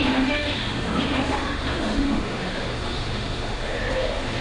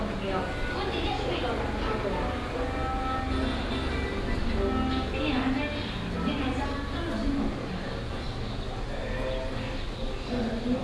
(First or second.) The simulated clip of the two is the first